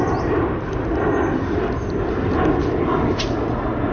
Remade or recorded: recorded